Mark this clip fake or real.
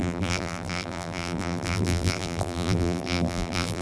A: fake